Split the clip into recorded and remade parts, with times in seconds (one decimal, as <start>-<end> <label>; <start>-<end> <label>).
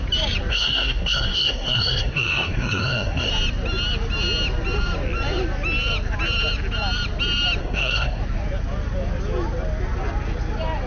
0.0-0.5 recorded; 0.5-3.3 remade; 3.3-7.6 recorded; 7.6-8.2 remade; 8.2-10.9 recorded